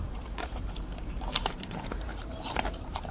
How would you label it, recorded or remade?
remade